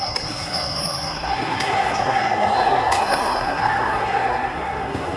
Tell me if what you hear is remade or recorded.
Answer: remade